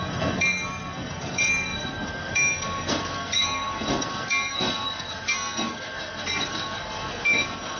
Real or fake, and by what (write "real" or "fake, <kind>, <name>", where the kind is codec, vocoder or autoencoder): fake, codec, SNAC